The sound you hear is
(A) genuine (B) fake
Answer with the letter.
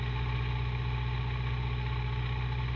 A